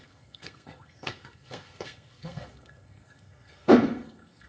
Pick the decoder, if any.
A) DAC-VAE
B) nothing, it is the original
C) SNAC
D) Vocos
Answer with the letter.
C